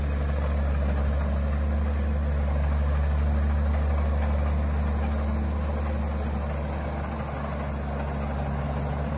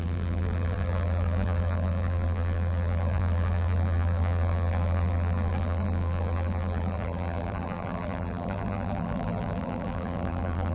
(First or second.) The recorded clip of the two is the first